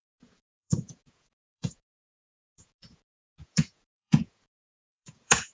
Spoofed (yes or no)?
yes